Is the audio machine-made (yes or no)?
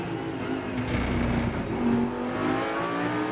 no